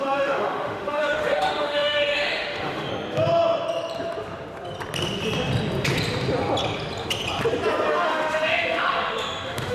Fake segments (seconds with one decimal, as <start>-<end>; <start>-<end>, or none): 0.0-2.9; 7.9-9.7